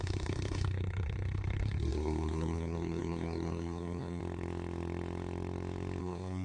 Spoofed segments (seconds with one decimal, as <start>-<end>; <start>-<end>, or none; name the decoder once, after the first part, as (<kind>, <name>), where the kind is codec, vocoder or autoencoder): 0.0-4.2 (codec, SNAC); 6.0-6.4